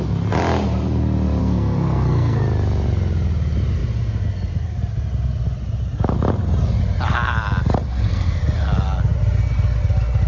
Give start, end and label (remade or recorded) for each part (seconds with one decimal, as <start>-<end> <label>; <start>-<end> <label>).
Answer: 0.0-1.4 recorded; 1.4-2.4 remade; 2.4-7.9 recorded; 7.9-8.4 remade; 8.4-10.3 recorded